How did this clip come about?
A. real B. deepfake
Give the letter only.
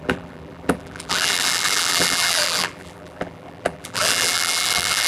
B